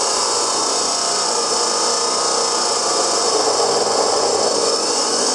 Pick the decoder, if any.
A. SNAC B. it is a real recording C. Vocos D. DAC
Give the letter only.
C